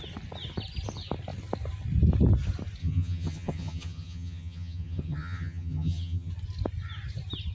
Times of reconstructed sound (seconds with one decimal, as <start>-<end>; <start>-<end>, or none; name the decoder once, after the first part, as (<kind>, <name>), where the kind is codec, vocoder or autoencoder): 2.8-6.3 (vocoder, HiFi-GAN)